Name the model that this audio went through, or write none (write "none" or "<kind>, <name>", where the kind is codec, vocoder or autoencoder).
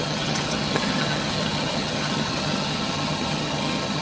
vocoder, HiFi-GAN